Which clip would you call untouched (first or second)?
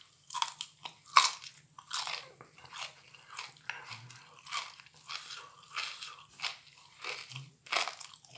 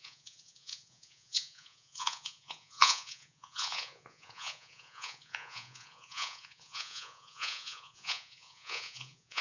first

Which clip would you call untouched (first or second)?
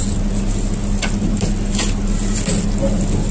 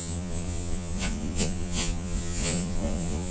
first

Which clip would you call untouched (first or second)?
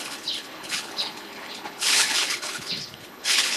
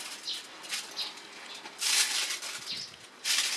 second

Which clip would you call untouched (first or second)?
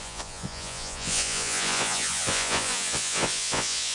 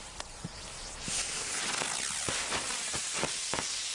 second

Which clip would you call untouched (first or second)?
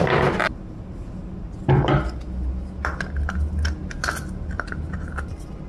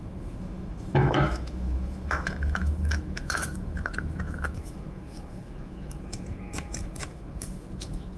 first